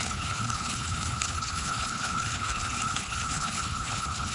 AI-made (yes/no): yes